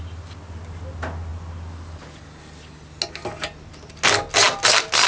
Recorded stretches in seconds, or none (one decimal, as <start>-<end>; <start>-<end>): 0.0-5.1